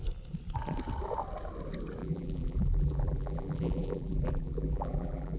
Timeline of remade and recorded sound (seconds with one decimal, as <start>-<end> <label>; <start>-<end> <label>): 0.0-2.0 recorded; 2.0-5.4 remade